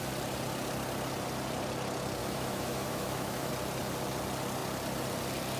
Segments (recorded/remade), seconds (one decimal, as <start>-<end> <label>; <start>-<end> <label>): 0.0-2.2 recorded; 2.2-3.5 remade; 3.5-5.6 recorded